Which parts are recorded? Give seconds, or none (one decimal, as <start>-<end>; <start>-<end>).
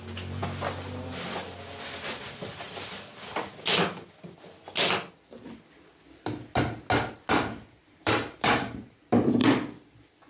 0.4-2.2; 3.1-7.8